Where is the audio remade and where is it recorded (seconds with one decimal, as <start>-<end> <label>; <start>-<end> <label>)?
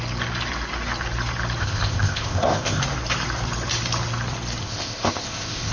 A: 0.0-1.6 recorded; 1.6-2.8 remade; 2.8-4.6 recorded; 4.6-5.7 remade